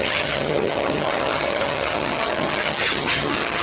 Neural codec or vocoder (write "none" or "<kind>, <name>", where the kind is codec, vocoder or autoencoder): vocoder, HiFi-GAN